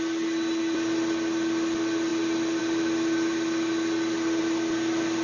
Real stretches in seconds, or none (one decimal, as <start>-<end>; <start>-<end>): 0.0-5.2